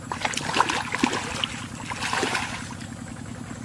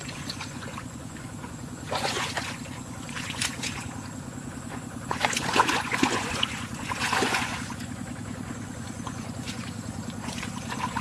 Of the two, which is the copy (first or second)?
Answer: second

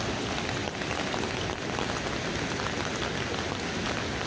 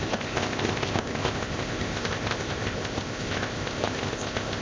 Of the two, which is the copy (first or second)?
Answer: second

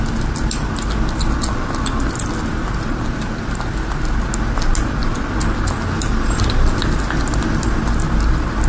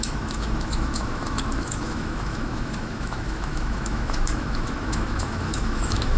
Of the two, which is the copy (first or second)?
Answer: second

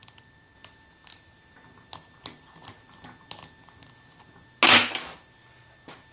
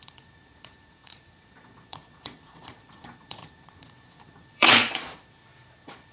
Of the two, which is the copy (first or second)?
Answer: second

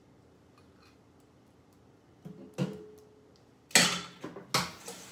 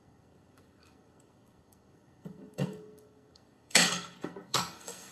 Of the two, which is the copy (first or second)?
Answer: second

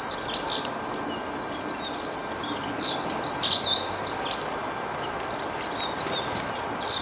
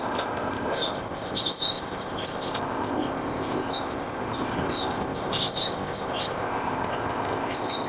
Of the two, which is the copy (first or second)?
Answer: second